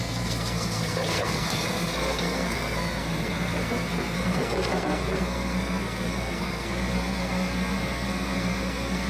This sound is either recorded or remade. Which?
remade